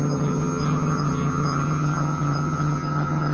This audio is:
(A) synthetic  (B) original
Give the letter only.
A